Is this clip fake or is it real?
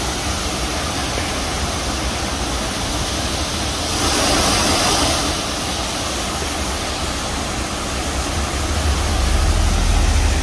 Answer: real